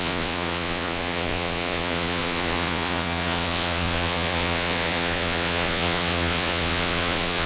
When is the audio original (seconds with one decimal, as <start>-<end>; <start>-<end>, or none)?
none